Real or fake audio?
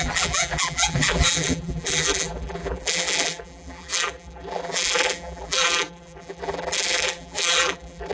fake